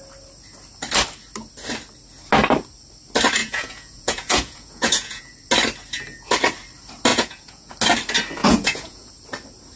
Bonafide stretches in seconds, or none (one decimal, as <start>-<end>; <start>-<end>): 0.0-3.4; 5.2-7.1; 7.7-8.4; 9.1-9.8